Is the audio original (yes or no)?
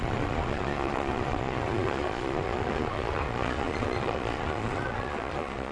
no